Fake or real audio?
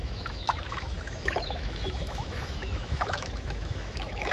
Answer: fake